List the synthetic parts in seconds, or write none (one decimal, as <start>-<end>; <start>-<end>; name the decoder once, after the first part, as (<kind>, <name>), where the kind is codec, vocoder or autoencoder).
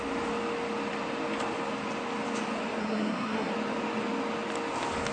2.8-3.5 (codec, SNAC)